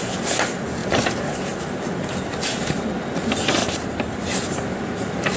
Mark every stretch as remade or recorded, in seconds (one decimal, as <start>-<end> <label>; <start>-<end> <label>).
0.0-0.8 recorded; 0.8-2.8 remade; 2.8-3.6 recorded; 3.6-4.2 remade; 4.2-5.4 recorded